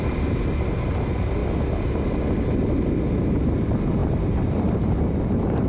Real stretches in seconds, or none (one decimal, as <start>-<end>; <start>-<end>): 1.4-3.2